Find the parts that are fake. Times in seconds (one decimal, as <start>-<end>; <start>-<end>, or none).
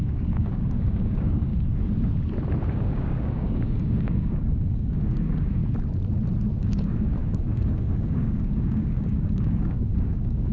0.0-1.5; 2.7-5.6; 6.6-10.5